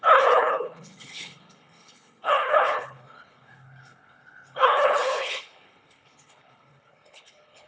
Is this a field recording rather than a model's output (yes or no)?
no